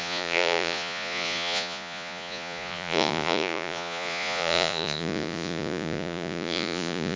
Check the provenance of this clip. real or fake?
fake